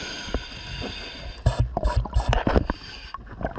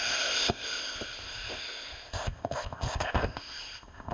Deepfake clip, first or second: second